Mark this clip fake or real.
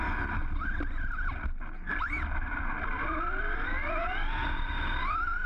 real